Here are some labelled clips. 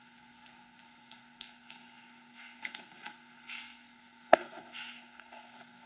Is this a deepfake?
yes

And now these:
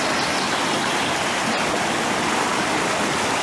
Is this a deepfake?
no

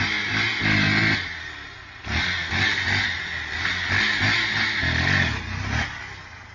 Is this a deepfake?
no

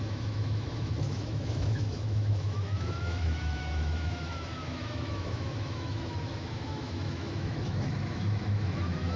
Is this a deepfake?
yes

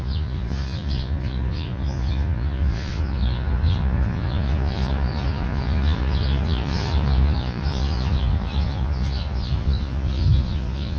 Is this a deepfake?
yes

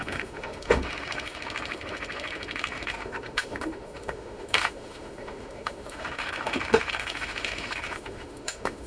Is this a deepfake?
yes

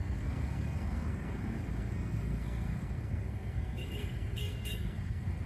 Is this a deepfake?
yes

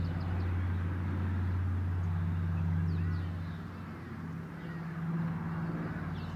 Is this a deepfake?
no